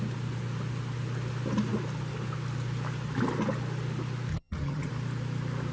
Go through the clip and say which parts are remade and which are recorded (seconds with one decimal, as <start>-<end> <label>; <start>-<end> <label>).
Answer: 0.0-4.3 recorded; 4.3-4.9 remade; 4.9-5.7 recorded